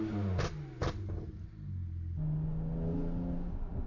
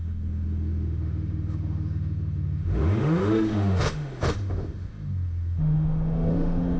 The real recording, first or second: first